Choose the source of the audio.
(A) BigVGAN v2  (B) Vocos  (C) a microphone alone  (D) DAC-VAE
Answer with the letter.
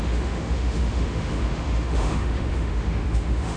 D